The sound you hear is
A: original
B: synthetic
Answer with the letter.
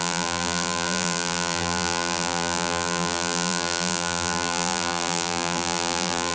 B